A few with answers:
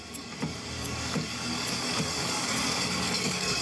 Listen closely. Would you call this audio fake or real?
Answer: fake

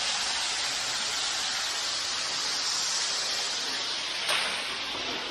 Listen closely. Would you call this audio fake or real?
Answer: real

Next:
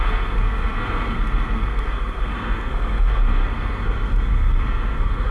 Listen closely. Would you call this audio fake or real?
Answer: fake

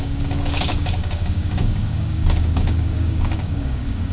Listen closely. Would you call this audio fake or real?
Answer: fake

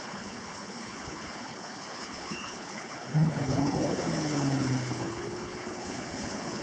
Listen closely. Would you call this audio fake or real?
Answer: fake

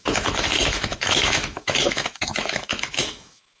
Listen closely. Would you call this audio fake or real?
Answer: fake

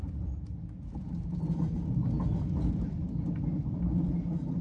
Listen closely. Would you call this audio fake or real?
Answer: real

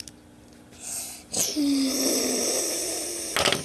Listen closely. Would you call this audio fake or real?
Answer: real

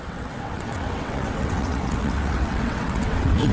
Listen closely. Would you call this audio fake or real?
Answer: fake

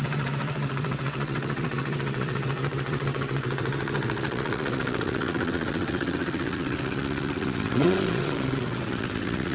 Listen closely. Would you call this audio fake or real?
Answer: fake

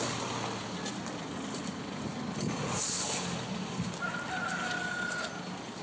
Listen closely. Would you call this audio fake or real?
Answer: real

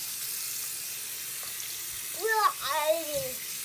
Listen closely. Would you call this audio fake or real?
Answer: real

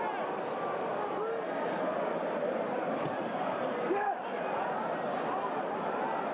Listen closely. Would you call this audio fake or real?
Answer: real